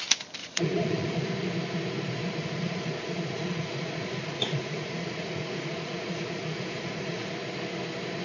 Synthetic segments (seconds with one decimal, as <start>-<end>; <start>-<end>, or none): 0.4-1.3; 2.4-7.3